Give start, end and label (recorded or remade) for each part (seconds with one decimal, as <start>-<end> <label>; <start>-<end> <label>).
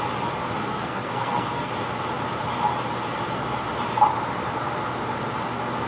0.0-0.6 recorded; 0.6-1.7 remade; 1.7-5.9 recorded